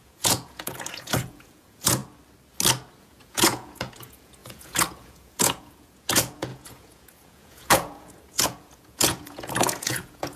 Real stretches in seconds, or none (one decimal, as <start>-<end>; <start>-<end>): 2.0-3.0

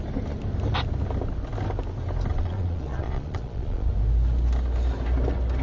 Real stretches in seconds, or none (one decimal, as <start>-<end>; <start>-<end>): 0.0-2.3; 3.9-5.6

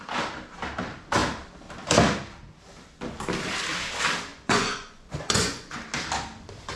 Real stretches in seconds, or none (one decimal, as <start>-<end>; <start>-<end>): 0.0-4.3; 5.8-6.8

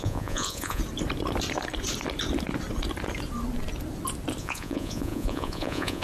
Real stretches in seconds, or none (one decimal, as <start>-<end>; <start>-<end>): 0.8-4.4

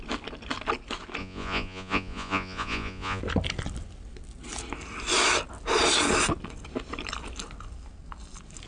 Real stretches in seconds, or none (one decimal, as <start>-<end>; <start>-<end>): 0.0-1.2; 3.2-8.7

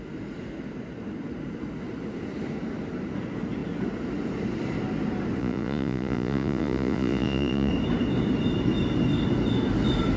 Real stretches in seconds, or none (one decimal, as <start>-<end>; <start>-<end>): 0.0-5.4; 7.7-10.2